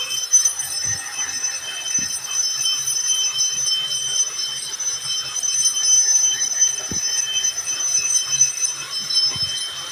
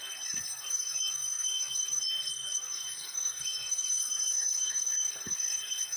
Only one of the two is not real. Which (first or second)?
second